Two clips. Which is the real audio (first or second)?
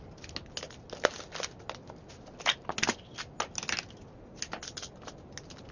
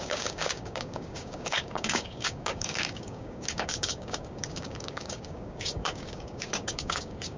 first